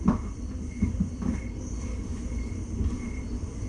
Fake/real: fake